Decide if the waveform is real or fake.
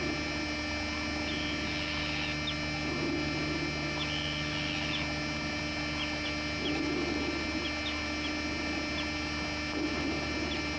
real